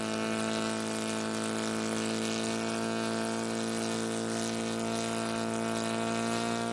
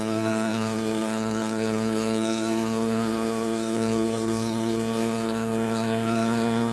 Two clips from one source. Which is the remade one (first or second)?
second